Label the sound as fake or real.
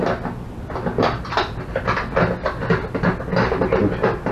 real